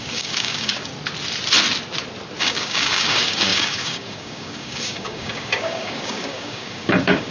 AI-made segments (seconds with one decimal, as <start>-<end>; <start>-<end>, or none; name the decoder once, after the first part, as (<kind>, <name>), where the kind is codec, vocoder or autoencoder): 0.0-0.9 (codec, DAC); 2.4-7.3